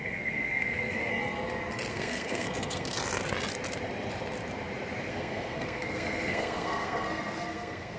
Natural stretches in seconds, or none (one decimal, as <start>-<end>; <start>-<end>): 1.1-1.9; 3.0-5.1